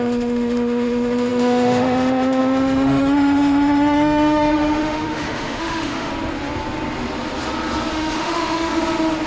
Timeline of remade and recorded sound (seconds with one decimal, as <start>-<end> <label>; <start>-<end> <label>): 0.0-6.1 remade; 6.1-7.9 recorded; 7.9-8.7 remade; 8.7-9.3 recorded